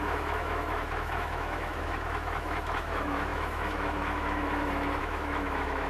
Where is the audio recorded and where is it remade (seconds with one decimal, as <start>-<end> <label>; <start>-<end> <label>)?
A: 0.0-5.9 remade